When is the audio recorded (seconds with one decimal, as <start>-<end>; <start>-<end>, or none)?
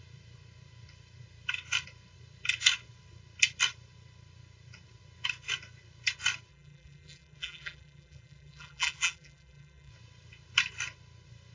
0.0-6.5; 9.9-11.5